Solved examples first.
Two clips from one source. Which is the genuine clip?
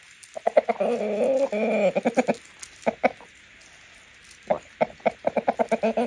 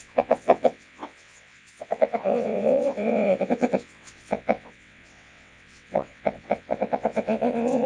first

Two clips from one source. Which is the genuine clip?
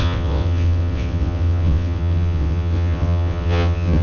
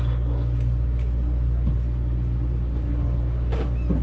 second